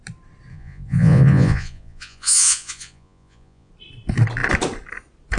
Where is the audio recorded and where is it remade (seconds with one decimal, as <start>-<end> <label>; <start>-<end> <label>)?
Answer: 0.0-0.5 recorded; 0.5-3.7 remade; 3.7-5.4 recorded